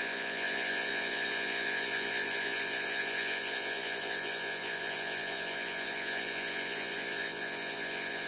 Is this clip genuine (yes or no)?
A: no